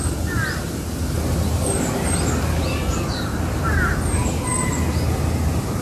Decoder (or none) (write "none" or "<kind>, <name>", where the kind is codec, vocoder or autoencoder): none